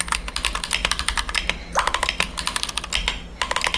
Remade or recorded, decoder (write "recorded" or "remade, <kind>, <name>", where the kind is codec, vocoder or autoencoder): recorded